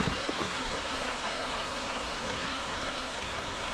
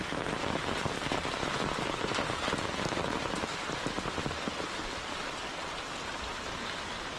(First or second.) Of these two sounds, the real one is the second